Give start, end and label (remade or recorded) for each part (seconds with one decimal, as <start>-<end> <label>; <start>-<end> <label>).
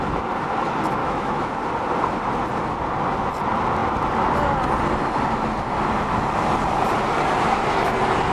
0.0-1.0 recorded; 1.0-1.5 remade; 1.5-8.3 recorded